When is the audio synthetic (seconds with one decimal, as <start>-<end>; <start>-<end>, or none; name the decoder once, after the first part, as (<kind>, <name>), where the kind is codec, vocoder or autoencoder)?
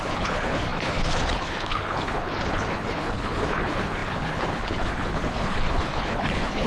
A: 0.0-6.7 (codec, HILCodec)